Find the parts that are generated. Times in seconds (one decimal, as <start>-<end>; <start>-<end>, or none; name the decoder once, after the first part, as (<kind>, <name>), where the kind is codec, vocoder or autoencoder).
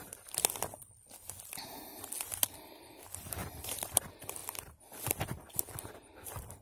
3.4-4.0 (vocoder, BigVGAN v2); 4.4-5.0